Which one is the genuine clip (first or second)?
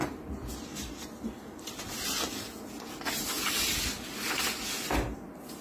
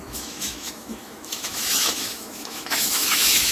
first